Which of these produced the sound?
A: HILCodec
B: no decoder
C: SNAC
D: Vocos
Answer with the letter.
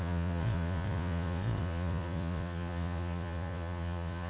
D